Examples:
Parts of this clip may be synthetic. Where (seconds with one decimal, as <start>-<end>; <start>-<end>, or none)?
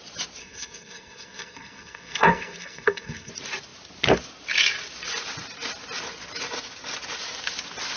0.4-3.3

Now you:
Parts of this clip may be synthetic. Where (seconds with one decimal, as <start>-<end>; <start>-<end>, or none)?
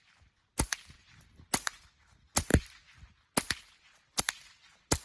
none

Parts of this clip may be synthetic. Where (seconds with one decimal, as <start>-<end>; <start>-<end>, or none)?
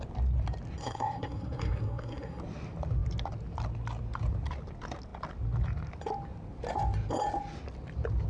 0.8-2.4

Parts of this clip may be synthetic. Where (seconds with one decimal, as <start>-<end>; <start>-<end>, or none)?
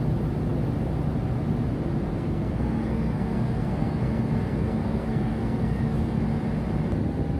2.1-6.2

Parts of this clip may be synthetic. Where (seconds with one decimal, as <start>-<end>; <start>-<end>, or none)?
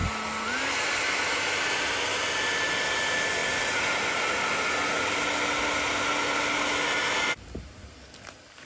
none